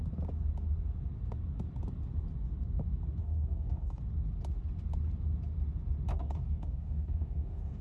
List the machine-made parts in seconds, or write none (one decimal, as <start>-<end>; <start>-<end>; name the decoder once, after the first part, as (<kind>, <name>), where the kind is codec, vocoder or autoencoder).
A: 3.2-4.0 (codec, DAC); 6.1-7.8